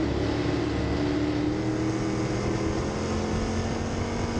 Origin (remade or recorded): recorded